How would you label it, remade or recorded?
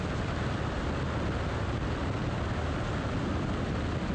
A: recorded